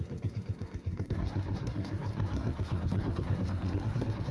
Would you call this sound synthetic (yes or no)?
yes